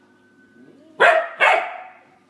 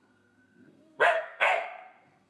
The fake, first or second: second